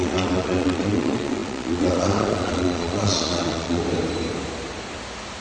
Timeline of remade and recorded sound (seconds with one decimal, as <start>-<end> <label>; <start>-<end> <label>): 0.0-3.8 remade; 3.8-5.4 recorded